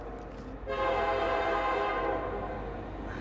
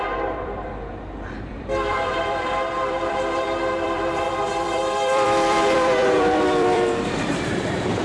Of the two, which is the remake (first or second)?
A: second